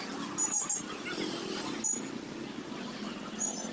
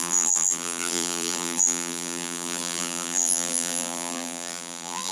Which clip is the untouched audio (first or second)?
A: first